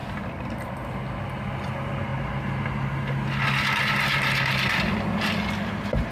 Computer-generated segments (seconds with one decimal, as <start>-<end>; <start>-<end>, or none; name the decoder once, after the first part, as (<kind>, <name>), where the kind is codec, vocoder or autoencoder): 0.0-0.7 (vocoder, BigVGAN v2)